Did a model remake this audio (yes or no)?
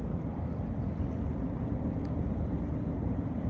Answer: yes